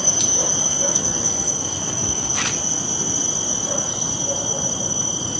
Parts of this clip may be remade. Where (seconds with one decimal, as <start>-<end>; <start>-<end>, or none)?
0.6-2.3